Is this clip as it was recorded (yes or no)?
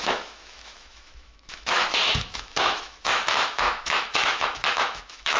no